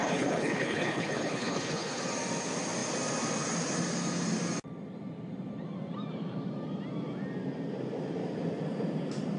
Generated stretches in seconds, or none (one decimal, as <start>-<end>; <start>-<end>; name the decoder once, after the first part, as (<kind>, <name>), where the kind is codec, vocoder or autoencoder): 0.0-2.0 (codec, HILCodec)